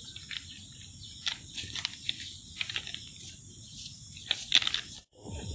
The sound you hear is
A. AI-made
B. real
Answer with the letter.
B